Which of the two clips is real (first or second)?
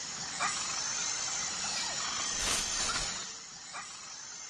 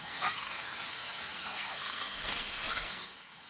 first